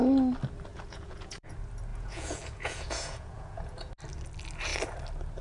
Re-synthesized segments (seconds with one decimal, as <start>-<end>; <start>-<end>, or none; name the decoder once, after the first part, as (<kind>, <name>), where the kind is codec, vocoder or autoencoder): 0.7-1.5 (vocoder, Vocos); 1.9-3.9

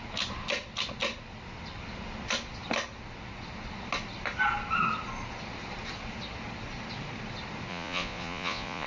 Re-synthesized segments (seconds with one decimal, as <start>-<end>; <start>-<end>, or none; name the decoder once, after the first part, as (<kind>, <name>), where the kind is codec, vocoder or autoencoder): 7.7-8.9 (vocoder, Vocos)

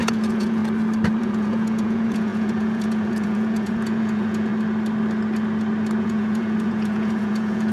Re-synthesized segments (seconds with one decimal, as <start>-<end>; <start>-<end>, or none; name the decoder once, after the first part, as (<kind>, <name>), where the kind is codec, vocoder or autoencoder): 0.0-0.6 (vocoder, Vocos); 1.2-4.5; 6.0-7.7

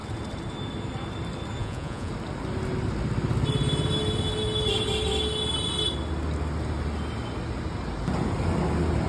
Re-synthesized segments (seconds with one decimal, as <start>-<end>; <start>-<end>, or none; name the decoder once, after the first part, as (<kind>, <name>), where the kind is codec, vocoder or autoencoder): 1.6-2.1 (vocoder, Vocos)

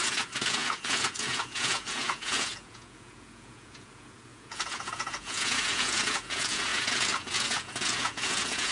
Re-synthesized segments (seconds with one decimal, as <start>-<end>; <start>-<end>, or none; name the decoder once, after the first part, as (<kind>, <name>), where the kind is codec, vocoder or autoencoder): 0.0-8.7 (vocoder, Vocos)